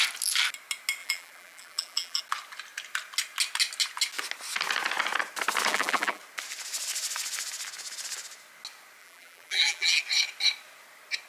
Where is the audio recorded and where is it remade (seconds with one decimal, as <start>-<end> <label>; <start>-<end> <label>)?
0.0-1.0 recorded; 1.0-2.2 remade; 2.2-5.7 recorded; 5.7-6.2 remade; 6.2-9.0 recorded; 9.0-10.0 remade; 10.0-11.3 recorded